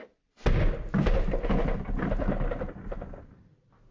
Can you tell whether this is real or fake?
real